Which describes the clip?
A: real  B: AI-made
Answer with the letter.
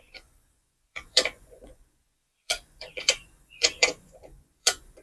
B